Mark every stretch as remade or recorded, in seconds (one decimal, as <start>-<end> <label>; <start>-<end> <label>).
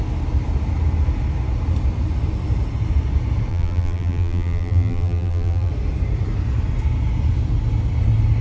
0.0-3.5 recorded; 3.5-5.7 remade; 5.7-8.4 recorded